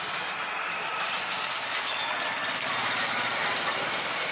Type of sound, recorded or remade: recorded